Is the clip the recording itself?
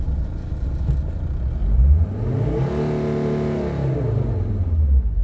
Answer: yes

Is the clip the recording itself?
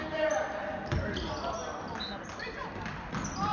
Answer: yes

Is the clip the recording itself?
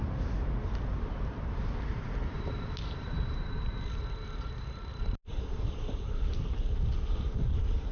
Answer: no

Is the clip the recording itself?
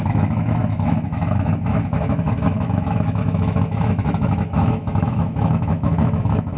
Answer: no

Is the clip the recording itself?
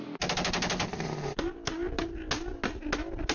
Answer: yes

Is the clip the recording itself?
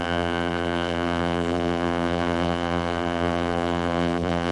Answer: no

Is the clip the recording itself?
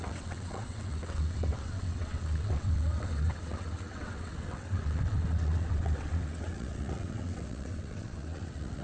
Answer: no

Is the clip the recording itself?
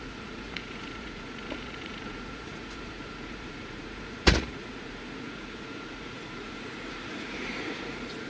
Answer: no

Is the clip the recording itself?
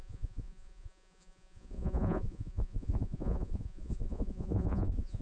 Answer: no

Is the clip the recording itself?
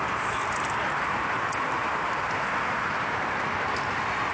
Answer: yes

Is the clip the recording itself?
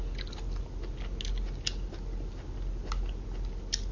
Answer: yes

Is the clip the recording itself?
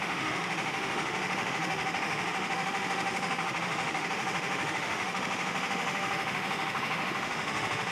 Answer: no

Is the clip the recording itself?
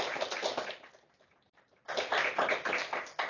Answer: yes